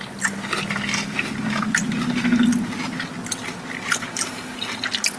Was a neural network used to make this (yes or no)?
no